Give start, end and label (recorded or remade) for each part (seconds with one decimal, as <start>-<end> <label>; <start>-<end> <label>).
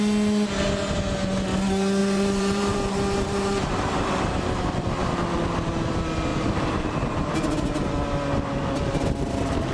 0.0-2.0 recorded; 2.0-5.1 remade; 5.1-6.3 recorded; 6.3-7.3 remade; 7.3-9.7 recorded